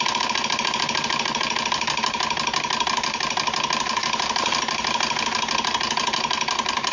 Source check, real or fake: real